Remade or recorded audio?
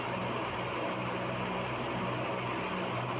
recorded